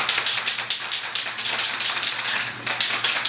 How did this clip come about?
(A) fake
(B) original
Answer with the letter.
B